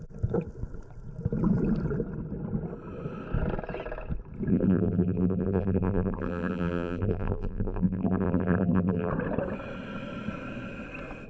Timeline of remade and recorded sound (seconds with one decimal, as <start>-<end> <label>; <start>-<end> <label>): 0.0-4.5 recorded; 4.5-9.1 remade; 9.1-11.3 recorded